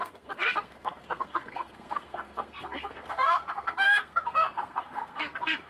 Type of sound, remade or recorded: remade